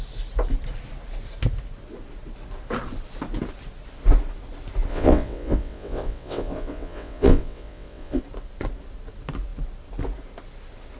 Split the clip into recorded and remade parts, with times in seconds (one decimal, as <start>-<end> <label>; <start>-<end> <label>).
0.0-4.9 recorded; 4.9-8.2 remade; 8.2-11.0 recorded